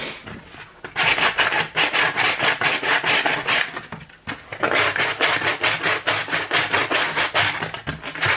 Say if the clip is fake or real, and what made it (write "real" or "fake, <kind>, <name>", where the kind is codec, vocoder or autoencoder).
real